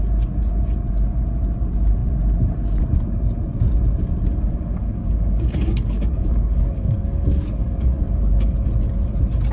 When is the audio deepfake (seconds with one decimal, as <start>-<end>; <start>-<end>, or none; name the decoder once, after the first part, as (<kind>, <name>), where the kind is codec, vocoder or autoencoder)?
4.3-8.5 (codec, DAC)